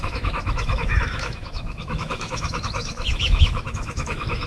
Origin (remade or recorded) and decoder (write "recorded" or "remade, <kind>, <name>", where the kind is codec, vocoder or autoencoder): remade, autoencoder, DAC-VAE